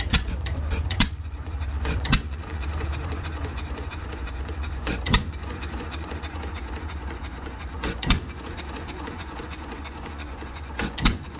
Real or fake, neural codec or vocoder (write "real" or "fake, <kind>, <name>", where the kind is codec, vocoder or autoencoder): fake, vocoder, Vocos